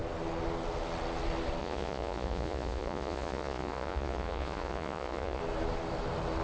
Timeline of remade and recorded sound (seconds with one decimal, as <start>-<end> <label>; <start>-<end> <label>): 0.0-1.6 recorded; 1.6-5.4 remade; 5.4-6.4 recorded